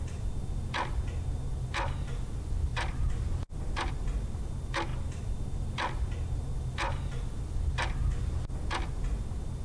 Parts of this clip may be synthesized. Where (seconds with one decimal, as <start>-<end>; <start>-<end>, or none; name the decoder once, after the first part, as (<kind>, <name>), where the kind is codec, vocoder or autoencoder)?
2.7-3.9 (vocoder, BigVGAN v2)